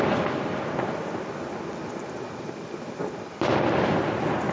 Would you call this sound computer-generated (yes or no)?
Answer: no